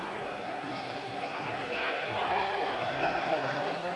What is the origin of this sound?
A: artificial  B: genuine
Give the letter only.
A